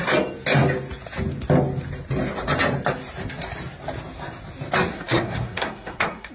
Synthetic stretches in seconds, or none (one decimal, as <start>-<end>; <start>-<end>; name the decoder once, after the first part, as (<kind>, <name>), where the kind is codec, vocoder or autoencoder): 4.9-6.3 (codec, SNAC)